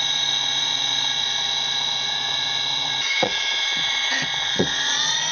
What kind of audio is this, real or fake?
fake